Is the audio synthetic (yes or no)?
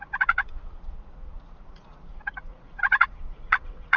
yes